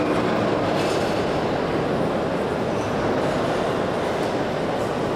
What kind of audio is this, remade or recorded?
recorded